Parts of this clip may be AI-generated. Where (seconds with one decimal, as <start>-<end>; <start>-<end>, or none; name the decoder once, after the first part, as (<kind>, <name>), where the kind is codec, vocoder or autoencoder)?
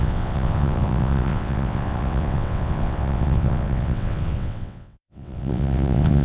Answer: 0.0-6.2 (vocoder, WaveNeXt)